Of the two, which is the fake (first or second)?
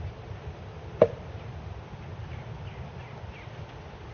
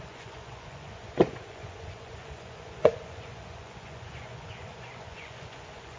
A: second